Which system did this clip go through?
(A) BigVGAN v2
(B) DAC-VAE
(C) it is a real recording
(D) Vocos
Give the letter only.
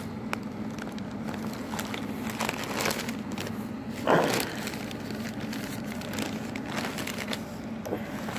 C